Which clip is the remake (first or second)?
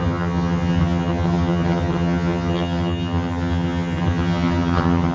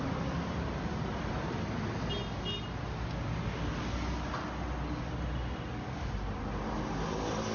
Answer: first